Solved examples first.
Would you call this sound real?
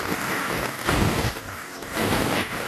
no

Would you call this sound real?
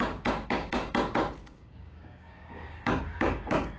no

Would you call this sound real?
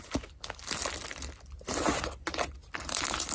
yes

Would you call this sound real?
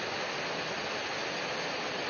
yes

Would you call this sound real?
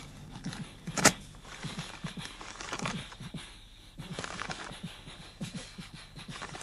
no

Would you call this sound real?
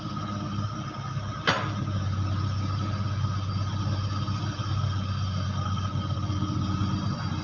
yes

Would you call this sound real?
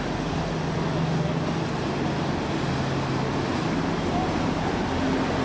yes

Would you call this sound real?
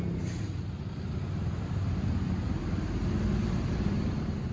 yes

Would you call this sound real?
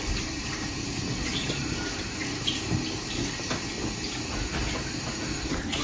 yes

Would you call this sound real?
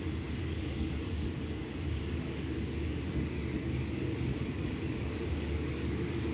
no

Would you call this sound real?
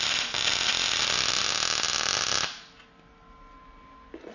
yes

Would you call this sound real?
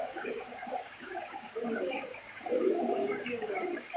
no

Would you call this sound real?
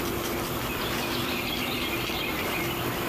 yes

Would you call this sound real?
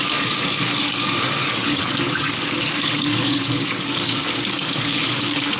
no